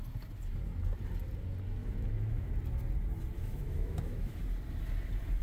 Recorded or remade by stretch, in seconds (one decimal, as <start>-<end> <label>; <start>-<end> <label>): 0.0-1.8 recorded; 1.8-2.5 remade; 2.5-3.4 recorded; 3.4-4.4 remade; 4.4-5.4 recorded